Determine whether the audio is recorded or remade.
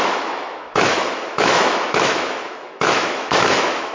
remade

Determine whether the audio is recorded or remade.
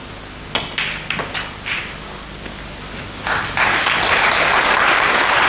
recorded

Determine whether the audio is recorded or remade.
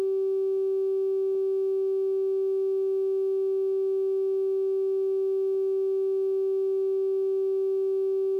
recorded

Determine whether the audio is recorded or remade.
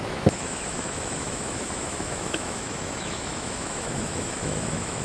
remade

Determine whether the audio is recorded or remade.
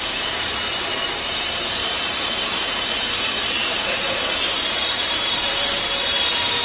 remade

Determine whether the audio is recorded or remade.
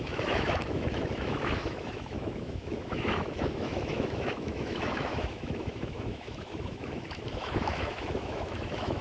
remade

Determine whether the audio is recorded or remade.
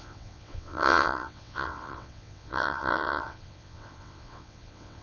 remade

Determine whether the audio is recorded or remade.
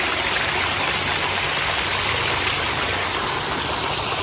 recorded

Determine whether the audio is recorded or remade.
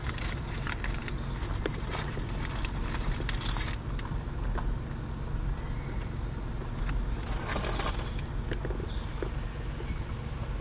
recorded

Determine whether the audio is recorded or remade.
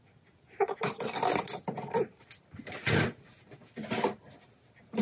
recorded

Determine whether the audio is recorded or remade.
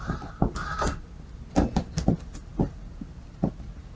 recorded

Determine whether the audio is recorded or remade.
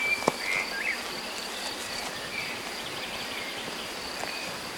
recorded